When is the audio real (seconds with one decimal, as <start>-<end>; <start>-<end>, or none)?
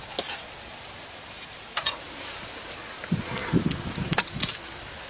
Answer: 0.0-5.1